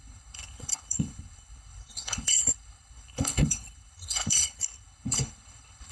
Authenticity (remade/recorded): remade